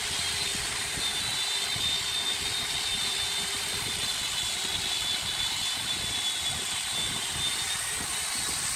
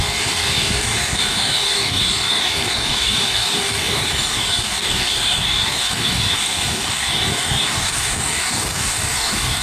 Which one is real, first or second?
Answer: first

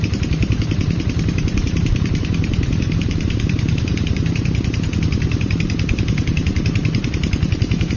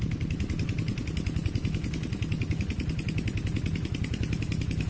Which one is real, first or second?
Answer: second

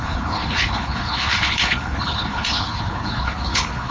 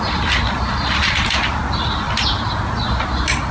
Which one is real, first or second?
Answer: second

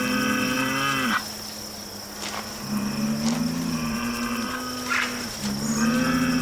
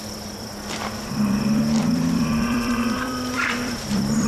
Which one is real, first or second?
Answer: first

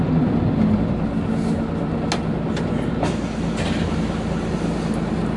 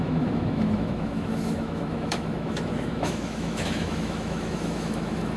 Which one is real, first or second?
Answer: first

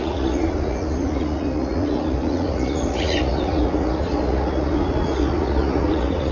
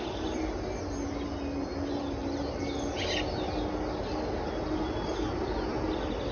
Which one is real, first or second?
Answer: second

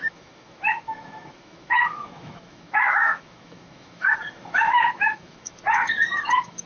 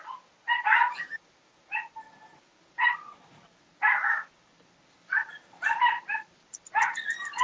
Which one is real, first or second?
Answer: second